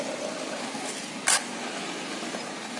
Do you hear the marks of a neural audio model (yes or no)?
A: no